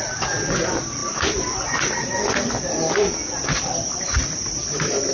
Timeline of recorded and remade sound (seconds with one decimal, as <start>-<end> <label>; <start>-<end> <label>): 0.0-1.0 recorded; 1.0-2.1 remade; 2.1-3.2 recorded; 3.2-3.9 remade; 3.9-5.1 recorded